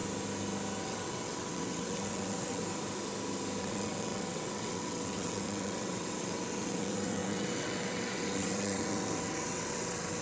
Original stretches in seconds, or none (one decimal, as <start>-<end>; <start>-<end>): 0.0-0.8; 2.6-3.6